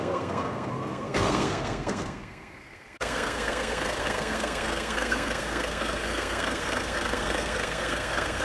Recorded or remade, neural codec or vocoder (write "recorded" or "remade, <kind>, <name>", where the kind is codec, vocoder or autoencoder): remade, codec, SNAC